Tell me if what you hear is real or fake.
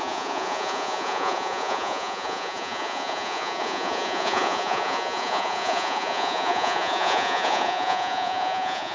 fake